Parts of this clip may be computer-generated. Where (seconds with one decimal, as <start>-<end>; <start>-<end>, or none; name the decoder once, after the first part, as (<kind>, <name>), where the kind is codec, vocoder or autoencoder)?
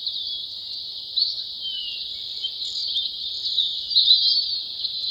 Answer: 0.0-1.8 (vocoder, BigVGAN v2); 2.4-5.1